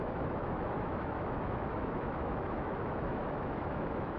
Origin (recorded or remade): remade